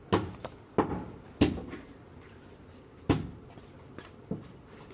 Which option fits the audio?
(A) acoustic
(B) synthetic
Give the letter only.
A